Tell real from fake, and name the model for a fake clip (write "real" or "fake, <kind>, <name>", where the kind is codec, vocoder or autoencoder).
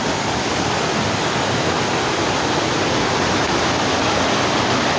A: real